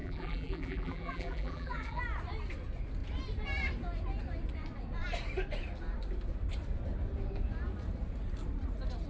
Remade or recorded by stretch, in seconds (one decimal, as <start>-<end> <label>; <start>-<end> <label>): 0.0-2.0 remade; 2.0-9.1 recorded